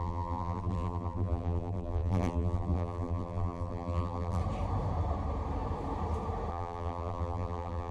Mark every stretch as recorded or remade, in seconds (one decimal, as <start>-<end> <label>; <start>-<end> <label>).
0.0-4.4 remade; 4.4-6.5 recorded; 6.5-7.9 remade